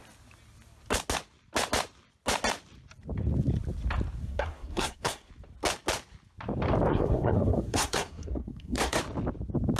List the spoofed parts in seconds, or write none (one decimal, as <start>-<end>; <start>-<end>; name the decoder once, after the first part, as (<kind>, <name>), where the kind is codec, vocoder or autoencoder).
4.2-5.3 (codec, SNAC); 6.9-9.0